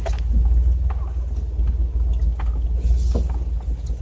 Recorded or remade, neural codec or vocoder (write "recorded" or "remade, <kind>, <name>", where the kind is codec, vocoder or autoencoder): recorded